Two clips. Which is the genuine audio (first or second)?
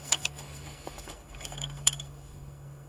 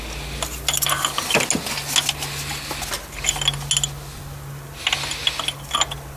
second